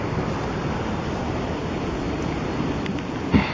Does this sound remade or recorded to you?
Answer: recorded